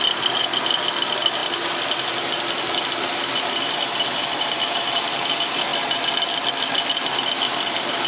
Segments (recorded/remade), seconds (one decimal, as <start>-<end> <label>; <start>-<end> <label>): 0.0-8.1 recorded